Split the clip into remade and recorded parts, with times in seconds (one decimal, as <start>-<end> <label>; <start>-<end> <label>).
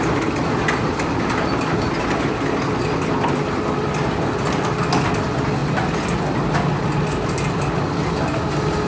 0.0-8.9 recorded